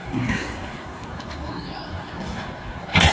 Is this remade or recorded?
remade